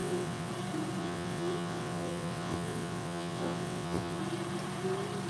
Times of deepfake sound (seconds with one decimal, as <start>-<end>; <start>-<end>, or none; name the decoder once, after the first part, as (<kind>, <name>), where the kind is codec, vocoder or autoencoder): 0.0-0.5 (vocoder, WaveNeXt); 1.0-4.2